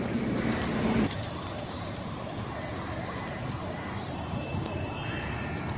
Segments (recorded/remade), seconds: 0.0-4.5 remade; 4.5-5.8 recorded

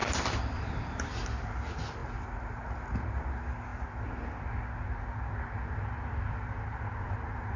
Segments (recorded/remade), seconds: 0.0-3.7 remade; 3.7-5.9 recorded; 5.9-7.6 remade